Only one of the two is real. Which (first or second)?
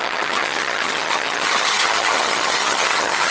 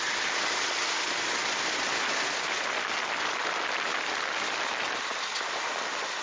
second